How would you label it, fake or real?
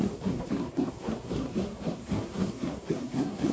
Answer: fake